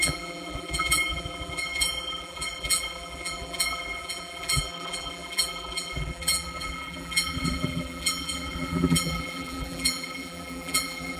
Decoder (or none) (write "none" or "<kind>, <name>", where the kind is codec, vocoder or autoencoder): vocoder, BigVGAN v2